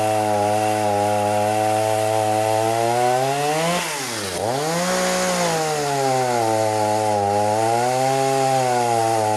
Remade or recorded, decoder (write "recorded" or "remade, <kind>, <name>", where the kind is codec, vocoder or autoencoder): recorded